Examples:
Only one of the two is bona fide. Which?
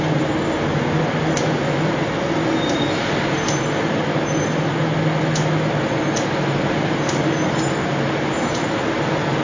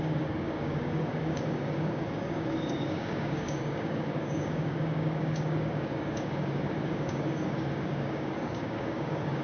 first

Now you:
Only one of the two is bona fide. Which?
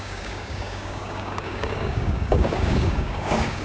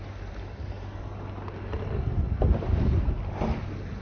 second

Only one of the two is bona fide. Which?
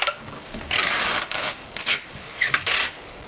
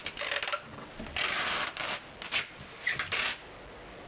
second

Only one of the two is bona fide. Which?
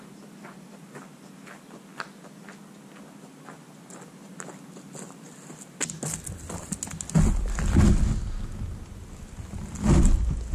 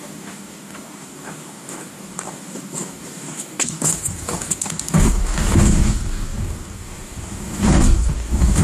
first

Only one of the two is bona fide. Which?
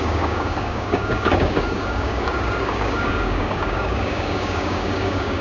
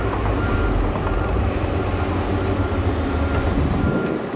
second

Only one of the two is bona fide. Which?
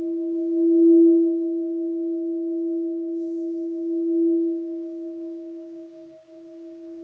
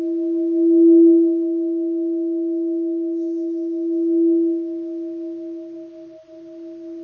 second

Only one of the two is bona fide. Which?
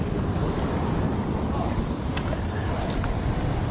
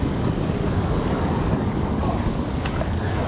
first